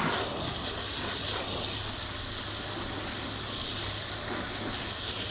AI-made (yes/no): no